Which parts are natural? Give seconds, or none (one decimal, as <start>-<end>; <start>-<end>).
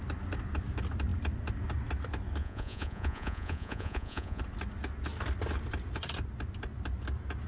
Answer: 0.0-2.4; 4.4-7.5